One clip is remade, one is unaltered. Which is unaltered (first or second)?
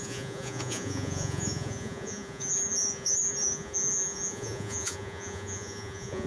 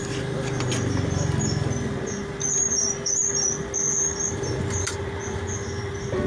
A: second